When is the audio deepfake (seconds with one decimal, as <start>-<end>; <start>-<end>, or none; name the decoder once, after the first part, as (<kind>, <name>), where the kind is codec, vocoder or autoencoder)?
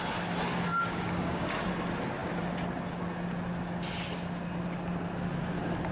0.7-1.7 (codec, DAC)